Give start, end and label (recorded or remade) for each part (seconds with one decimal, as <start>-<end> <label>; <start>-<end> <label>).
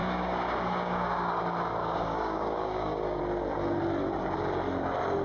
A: 0.0-1.4 remade; 1.4-1.8 recorded; 1.8-3.2 remade; 3.2-5.2 recorded